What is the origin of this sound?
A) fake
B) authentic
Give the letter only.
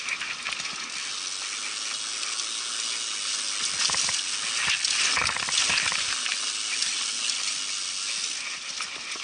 B